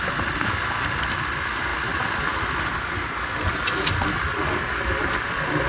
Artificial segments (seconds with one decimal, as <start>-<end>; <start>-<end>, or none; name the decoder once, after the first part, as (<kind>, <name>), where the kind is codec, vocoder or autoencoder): none